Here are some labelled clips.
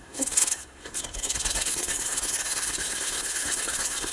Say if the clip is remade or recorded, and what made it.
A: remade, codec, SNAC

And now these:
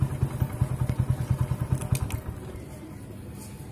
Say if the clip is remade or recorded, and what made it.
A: recorded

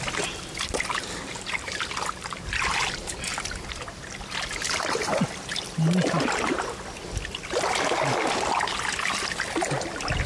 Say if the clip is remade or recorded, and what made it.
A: recorded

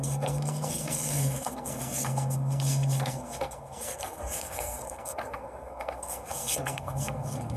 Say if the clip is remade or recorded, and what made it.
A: remade, codec, SNAC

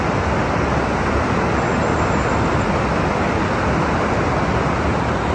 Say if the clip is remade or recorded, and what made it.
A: recorded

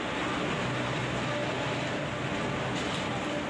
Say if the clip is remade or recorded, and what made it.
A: recorded